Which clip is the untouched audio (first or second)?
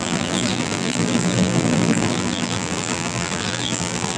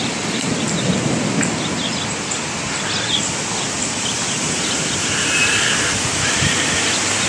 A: second